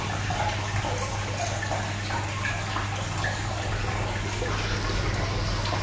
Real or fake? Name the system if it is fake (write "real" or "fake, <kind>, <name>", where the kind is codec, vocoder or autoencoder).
real